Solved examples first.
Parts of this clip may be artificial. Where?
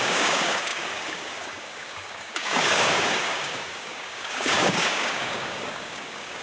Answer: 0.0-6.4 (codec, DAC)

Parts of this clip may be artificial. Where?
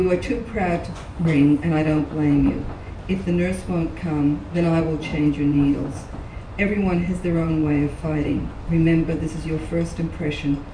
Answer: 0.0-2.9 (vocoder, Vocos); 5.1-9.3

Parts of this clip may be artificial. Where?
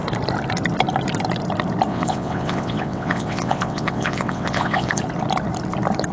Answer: 1.9-5.0 (vocoder, WaveNeXt)